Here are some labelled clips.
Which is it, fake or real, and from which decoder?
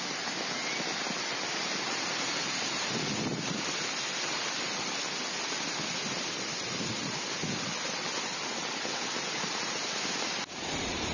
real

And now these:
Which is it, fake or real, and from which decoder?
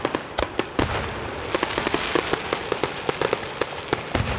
real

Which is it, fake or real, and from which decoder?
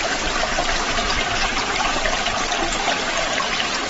fake, vocoder, BigVGAN v2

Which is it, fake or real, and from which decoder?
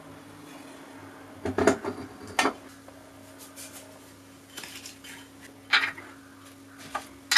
real